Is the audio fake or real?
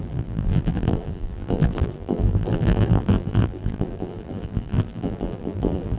fake